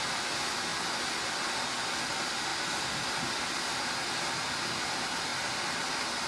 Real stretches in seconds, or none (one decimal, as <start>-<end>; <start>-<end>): 0.0-6.3